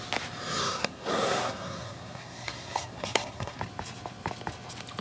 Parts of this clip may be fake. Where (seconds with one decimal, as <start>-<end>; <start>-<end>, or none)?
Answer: 0.6-3.6